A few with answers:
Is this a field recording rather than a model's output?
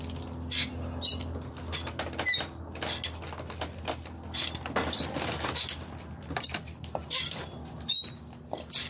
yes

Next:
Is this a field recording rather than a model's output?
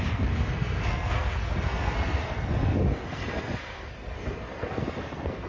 no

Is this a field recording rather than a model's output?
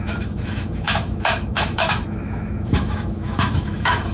no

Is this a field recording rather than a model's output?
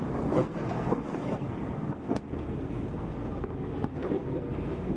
no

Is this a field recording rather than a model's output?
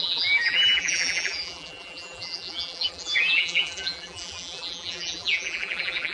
no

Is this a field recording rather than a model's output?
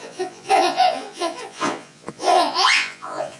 no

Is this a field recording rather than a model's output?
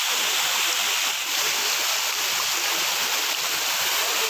yes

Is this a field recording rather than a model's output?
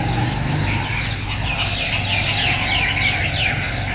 yes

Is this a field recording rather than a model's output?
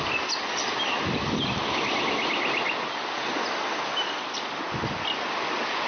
yes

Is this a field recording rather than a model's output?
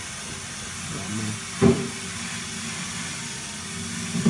yes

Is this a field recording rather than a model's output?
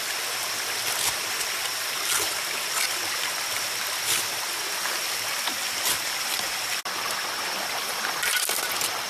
yes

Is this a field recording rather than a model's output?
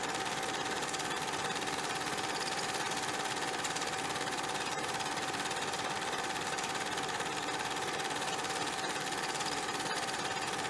no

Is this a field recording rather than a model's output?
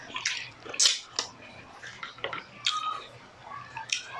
yes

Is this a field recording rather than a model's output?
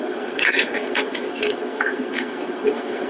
no